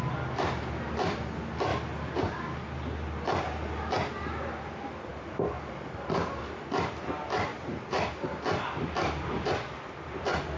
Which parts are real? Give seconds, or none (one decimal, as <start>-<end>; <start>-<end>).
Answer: 0.0-1.7; 3.4-5.1; 5.6-7.5; 10.2-10.6